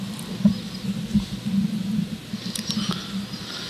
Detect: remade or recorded recorded